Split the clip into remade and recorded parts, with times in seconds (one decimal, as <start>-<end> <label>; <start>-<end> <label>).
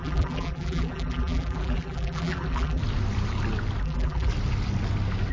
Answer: 0.0-2.8 remade; 2.8-3.8 recorded; 3.8-4.3 remade; 4.3-5.3 recorded